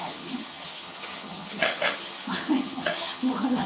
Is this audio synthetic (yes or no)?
yes